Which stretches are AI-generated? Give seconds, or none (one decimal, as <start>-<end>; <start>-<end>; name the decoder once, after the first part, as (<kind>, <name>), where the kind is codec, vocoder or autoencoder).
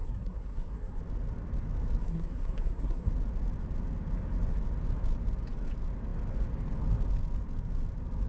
0.0-1.0 (codec, SNAC); 2.0-3.1